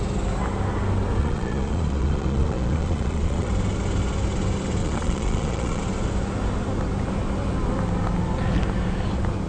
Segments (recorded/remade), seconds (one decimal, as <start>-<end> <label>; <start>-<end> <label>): 0.0-1.2 recorded; 1.2-3.5 remade; 3.5-4.8 recorded; 4.8-5.8 remade; 5.8-9.5 recorded